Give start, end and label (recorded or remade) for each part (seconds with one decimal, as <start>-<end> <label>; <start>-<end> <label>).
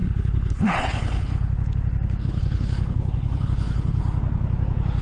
0.0-1.3 remade; 1.3-2.2 recorded; 2.2-4.0 remade; 4.0-5.0 recorded